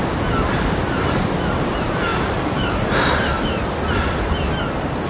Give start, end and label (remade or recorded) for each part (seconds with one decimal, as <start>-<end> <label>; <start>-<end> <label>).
0.0-5.1 recorded